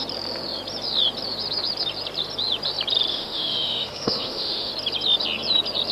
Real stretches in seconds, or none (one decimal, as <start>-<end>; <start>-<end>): 0.0-3.1; 4.7-5.9

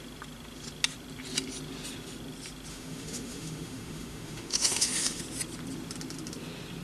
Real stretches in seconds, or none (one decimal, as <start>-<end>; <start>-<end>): 0.0-2.7; 5.2-6.8

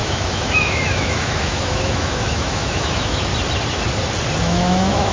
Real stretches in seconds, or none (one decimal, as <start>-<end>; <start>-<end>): 3.3-4.4

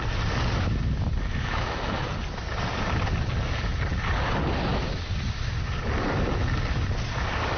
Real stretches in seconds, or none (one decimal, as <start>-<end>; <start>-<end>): 0.0-1.3; 1.9-7.6

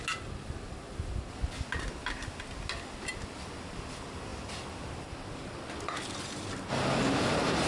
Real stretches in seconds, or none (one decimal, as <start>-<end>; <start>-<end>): 0.0-7.7

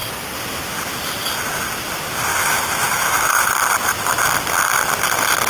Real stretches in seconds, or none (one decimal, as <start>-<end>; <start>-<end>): 0.0-2.3; 3.5-5.5